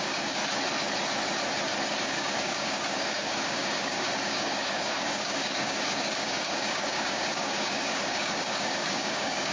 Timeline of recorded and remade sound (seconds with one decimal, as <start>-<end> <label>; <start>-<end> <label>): 0.0-0.4 remade; 0.4-2.0 recorded; 2.0-9.5 remade